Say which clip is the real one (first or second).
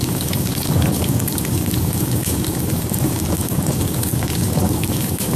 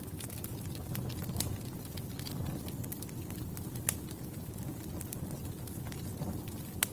second